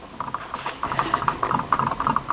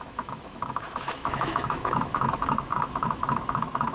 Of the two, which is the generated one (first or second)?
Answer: second